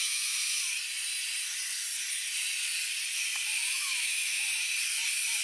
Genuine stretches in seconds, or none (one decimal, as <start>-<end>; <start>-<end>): 0.6-3.6; 4.4-5.4